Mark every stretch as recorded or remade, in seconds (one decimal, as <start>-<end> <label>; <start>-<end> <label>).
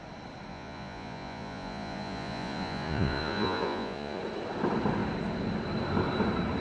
0.0-0.5 recorded; 0.5-4.2 remade; 4.2-6.6 recorded